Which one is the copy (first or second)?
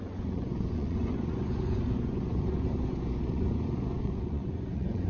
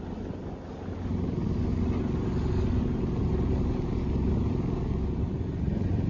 first